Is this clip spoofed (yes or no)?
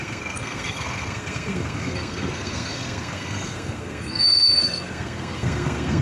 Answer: yes